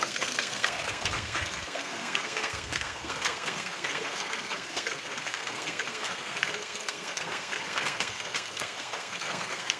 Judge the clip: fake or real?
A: fake